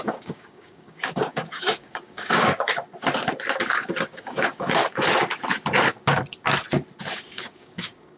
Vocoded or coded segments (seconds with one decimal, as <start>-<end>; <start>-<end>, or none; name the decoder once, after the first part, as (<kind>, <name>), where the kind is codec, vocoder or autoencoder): 0.0-2.7 (codec, DAC); 3.7-4.8; 7.1-8.2